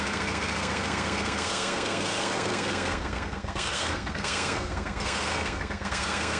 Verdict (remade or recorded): remade